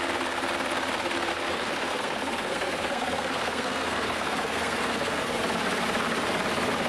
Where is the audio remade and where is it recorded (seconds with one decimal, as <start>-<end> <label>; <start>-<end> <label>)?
0.0-1.3 recorded; 1.3-5.4 remade; 5.4-6.9 recorded